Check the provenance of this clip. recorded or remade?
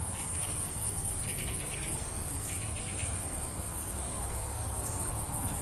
remade